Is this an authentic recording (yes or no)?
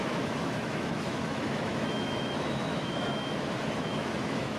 no